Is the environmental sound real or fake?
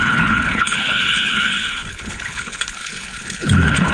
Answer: fake